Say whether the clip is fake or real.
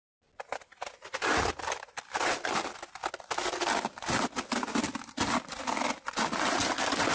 real